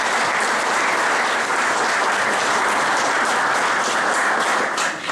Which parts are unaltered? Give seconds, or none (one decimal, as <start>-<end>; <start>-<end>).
0.0-5.1